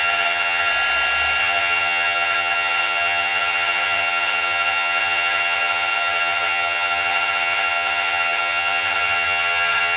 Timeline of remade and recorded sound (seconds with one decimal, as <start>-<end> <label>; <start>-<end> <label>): 0.0-0.7 remade; 0.7-1.4 recorded; 1.4-10.0 remade